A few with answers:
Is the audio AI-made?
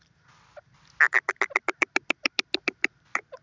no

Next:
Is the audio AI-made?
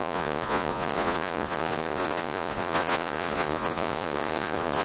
yes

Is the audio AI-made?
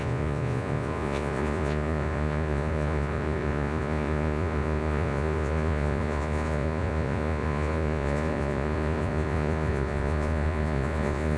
yes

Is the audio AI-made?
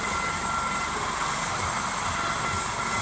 no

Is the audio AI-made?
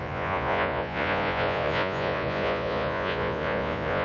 yes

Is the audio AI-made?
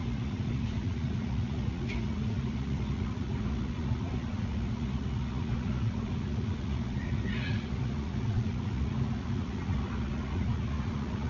yes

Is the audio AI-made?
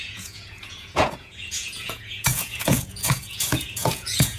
yes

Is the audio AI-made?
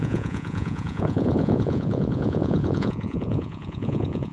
yes